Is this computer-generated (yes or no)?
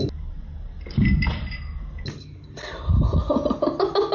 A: no